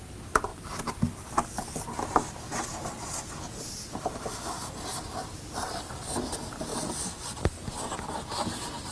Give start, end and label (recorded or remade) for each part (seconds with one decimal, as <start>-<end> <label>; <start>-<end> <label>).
0.0-8.9 recorded